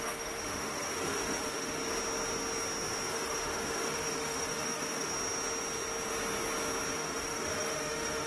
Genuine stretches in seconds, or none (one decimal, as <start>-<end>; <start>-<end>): 1.8-3.1; 5.1-6.9